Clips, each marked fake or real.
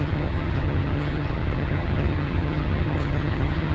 fake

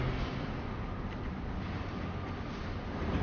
real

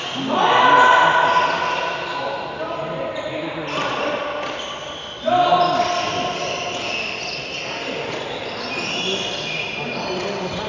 real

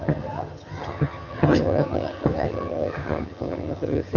fake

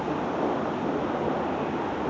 real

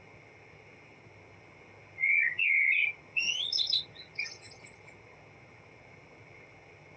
fake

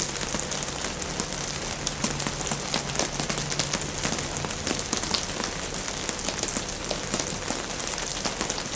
real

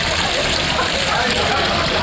real